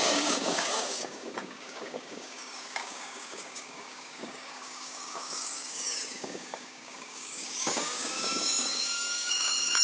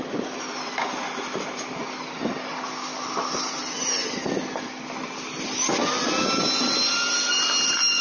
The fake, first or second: first